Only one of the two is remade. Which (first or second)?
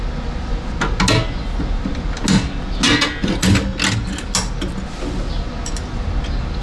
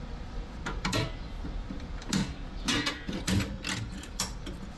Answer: second